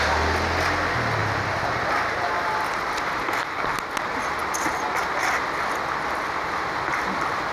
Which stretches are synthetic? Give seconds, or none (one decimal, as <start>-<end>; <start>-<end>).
none